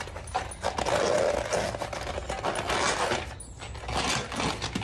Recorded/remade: recorded